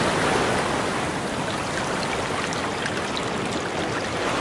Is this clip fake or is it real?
real